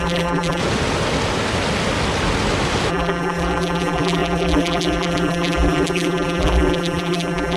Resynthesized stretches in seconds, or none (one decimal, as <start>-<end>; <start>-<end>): 0.0-0.6; 2.9-7.6